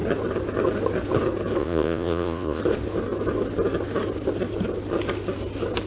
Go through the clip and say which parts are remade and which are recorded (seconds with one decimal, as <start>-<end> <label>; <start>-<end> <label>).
0.0-1.6 recorded; 1.6-2.6 remade; 2.6-5.9 recorded